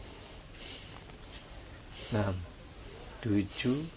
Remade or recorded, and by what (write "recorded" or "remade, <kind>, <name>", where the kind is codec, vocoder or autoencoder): recorded